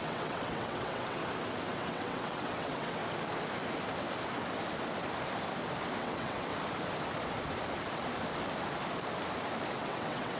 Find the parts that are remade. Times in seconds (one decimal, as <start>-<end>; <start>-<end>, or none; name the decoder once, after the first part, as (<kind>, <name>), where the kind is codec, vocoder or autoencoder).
0.0-1.2 (vocoder, WaveNeXt); 1.7-3.0; 6.0-6.5; 9.7-10.4